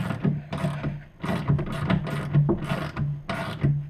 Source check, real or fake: real